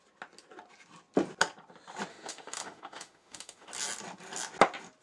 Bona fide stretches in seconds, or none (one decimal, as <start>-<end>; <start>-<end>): 0.0-2.1; 3.7-5.0